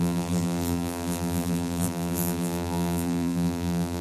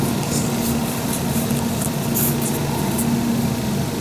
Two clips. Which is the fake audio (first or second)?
first